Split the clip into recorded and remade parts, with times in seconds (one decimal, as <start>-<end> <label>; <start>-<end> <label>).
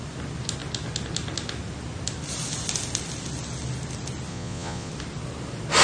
0.0-4.3 recorded; 4.3-4.9 remade; 4.9-5.8 recorded